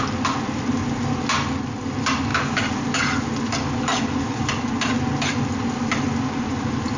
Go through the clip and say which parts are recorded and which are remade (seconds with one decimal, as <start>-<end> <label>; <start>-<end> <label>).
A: 0.0-7.0 recorded